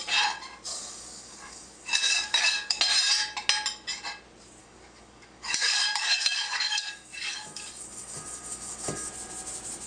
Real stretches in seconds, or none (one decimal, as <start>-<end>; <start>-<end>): 0.0-0.7; 2.8-4.6; 9.1-9.9